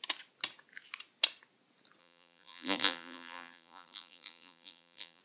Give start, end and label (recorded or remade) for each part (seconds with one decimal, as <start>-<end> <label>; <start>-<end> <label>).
0.0-2.0 recorded; 2.0-5.2 remade